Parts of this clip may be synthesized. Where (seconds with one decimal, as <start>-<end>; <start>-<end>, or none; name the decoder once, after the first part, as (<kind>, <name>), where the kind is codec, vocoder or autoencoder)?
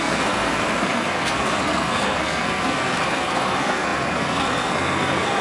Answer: 0.0-5.4 (codec, SNAC)